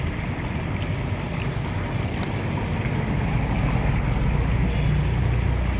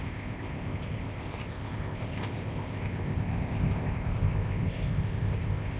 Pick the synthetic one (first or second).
second